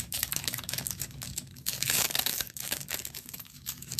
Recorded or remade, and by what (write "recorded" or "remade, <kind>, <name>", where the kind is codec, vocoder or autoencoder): remade, codec, DAC